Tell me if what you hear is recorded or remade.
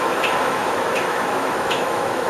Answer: remade